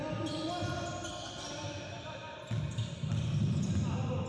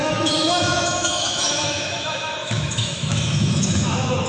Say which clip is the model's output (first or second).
second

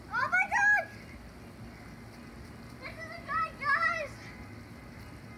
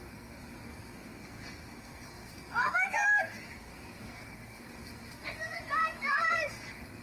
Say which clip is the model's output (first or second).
second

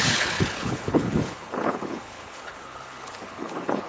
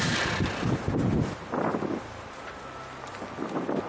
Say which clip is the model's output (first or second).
first